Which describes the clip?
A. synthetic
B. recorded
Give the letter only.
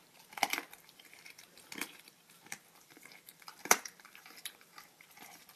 A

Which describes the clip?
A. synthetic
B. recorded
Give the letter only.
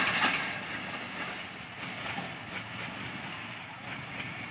B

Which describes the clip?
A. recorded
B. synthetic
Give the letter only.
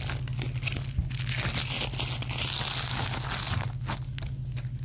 A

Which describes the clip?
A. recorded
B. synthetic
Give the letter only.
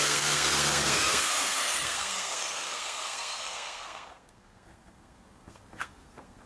B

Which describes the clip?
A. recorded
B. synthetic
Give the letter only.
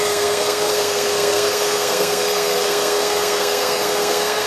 B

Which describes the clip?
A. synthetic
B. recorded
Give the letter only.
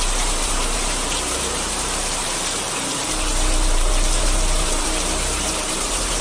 A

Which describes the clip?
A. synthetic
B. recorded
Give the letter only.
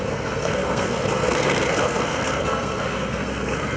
A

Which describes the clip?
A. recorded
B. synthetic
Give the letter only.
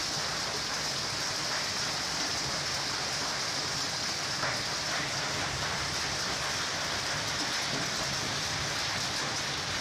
A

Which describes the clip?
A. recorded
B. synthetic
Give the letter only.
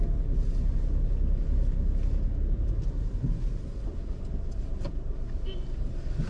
A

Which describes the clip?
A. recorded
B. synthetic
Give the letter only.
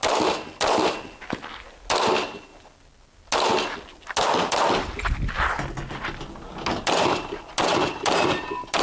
A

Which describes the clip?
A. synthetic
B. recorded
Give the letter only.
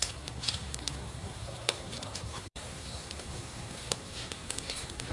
A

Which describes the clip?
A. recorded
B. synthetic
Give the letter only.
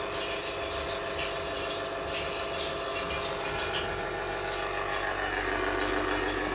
A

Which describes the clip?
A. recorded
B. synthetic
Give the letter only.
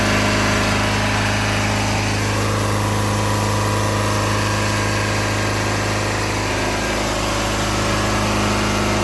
A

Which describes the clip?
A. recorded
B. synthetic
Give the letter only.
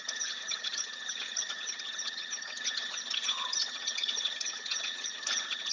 B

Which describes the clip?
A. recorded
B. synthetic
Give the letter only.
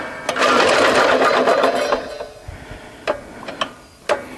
A